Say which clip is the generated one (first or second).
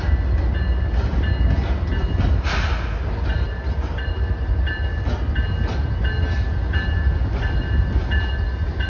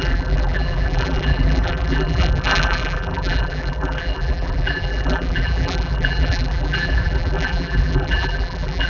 second